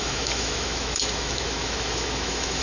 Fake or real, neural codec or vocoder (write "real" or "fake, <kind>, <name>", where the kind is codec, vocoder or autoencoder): fake, autoencoder, DAC-VAE